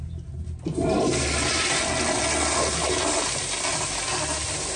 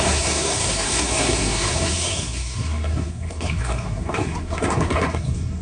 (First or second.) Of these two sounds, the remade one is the second